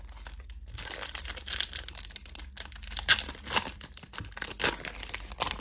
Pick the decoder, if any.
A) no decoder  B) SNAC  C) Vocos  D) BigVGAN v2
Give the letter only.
A